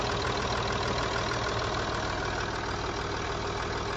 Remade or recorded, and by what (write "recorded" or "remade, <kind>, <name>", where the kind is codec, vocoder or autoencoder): recorded